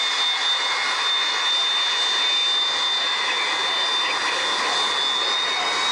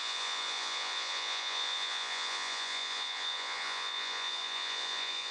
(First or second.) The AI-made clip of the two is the second